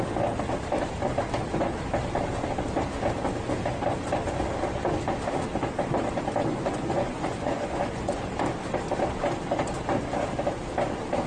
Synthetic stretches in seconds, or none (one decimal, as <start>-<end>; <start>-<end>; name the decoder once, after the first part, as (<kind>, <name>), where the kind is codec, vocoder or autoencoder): 6.5-8.2 (vocoder, Vocos)